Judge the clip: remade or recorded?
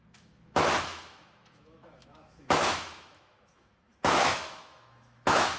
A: remade